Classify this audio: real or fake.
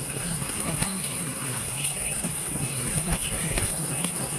fake